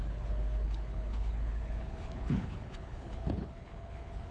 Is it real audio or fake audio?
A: fake